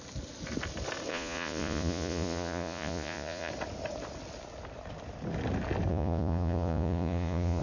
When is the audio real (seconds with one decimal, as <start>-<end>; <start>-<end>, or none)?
0.0-1.1; 3.5-5.9